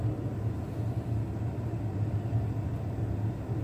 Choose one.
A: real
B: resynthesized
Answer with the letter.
A